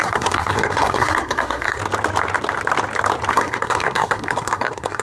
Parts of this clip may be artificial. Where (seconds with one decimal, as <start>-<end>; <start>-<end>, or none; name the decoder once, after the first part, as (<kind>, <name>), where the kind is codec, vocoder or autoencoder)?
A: 0.0-1.8 (codec, SNAC); 3.3-5.0